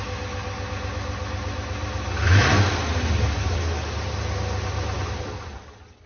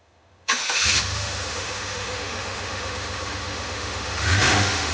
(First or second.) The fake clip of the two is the second